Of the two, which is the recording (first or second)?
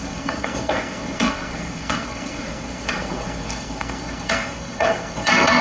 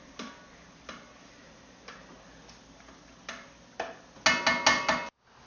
second